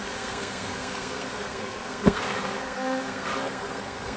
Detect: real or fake fake